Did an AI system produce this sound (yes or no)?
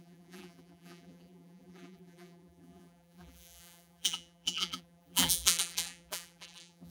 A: yes